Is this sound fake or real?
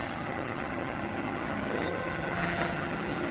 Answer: fake